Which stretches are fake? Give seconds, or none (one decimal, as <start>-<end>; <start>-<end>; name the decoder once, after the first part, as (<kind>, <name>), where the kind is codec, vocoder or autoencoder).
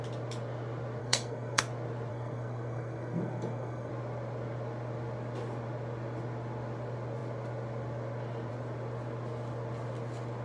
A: 1.0-1.6 (codec, SNAC); 2.1-3.9